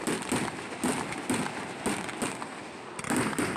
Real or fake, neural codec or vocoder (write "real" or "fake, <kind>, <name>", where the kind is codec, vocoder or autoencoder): real